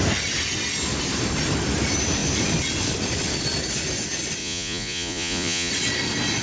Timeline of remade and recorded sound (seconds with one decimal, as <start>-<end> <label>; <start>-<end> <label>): 0.0-4.4 recorded; 4.4-5.7 remade; 5.7-6.4 recorded